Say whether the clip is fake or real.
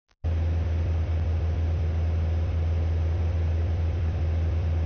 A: fake